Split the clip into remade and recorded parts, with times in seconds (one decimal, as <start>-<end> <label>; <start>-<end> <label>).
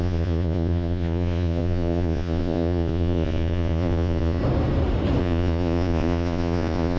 0.0-4.4 remade; 4.4-5.2 recorded; 5.2-7.0 remade